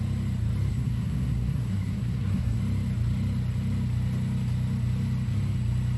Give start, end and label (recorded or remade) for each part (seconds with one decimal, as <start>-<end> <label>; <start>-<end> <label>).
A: 0.0-0.7 recorded; 0.7-2.6 remade; 2.6-6.0 recorded